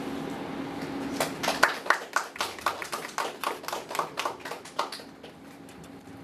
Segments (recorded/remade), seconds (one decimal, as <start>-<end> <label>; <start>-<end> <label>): 0.0-6.2 recorded